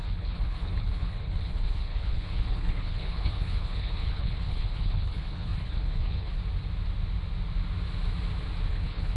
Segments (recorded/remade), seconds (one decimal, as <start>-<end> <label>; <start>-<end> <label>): 0.0-6.4 remade; 6.4-8.7 recorded; 8.7-9.2 remade